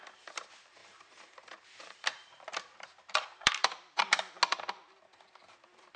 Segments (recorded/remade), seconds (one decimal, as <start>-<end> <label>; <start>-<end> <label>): 0.0-0.8 recorded; 0.8-4.4 remade; 4.4-6.0 recorded